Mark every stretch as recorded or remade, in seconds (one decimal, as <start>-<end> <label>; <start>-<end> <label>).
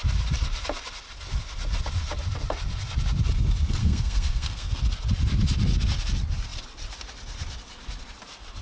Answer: 0.0-3.8 recorded; 3.8-4.8 remade; 4.8-8.6 recorded